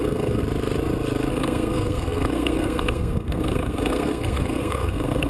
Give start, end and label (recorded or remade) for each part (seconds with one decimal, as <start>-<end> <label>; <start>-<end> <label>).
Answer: 0.0-0.4 remade; 0.4-1.3 recorded; 1.3-5.3 remade